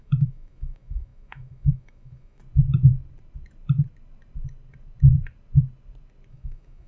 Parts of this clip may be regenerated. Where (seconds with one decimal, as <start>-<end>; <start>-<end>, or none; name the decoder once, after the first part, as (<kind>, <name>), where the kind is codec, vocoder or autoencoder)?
0.0-2.4 (autoencoder, DAC-VAE); 6.3-6.9